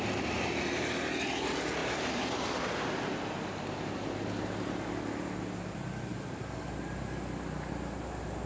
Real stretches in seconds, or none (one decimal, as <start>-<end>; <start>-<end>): 0.0-8.5